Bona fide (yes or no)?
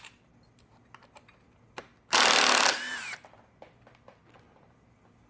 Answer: yes